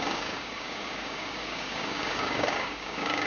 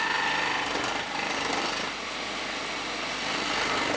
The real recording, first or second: second